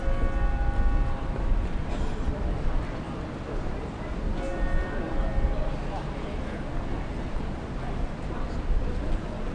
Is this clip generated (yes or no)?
no